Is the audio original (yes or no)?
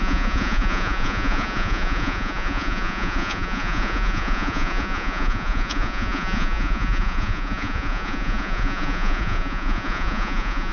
no